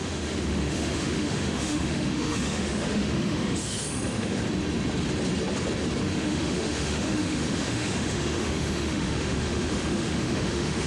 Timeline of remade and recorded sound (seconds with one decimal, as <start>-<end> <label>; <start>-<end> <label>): 0.0-4.4 remade; 4.4-6.1 recorded; 6.1-10.9 remade